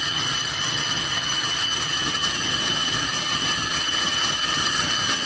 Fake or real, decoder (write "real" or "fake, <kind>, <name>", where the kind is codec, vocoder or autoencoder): fake, vocoder, HiFi-GAN